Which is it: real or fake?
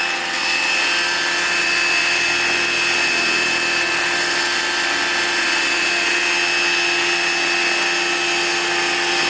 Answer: real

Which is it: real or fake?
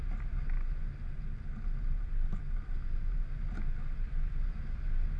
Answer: real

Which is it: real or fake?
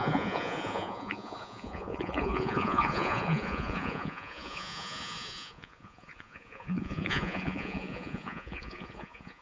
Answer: fake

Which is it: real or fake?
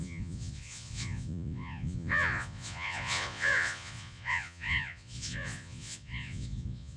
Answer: fake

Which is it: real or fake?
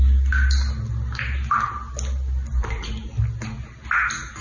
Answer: real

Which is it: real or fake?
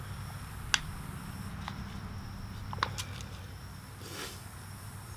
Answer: real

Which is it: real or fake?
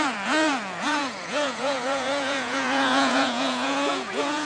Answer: fake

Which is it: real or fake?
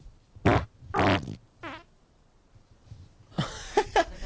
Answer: real